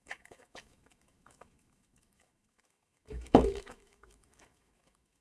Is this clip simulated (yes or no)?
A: yes